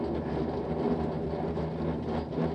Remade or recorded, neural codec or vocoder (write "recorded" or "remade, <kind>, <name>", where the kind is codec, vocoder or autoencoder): recorded